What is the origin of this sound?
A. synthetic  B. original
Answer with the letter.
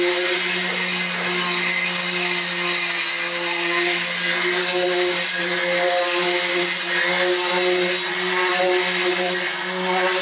B